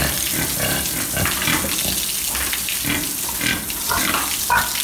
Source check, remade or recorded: recorded